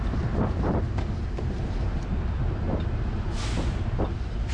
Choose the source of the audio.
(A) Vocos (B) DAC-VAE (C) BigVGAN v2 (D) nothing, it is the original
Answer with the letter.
D